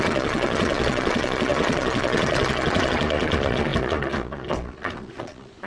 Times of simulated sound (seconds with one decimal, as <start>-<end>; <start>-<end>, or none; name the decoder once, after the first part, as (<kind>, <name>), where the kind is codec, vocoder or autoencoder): 0.0-5.7 (vocoder, Vocos)